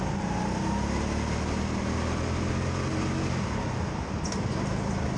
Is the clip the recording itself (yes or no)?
yes